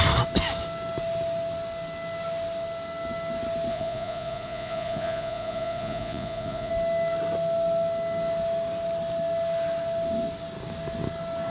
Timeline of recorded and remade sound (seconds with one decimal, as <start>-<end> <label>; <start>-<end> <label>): 0.0-3.7 recorded; 3.7-6.7 remade; 6.7-11.5 recorded